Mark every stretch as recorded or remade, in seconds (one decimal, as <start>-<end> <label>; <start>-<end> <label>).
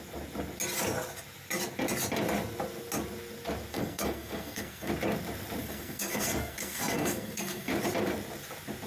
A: 0.0-3.7 recorded; 3.7-4.9 remade; 4.9-5.6 recorded; 5.6-7.7 remade; 7.7-8.9 recorded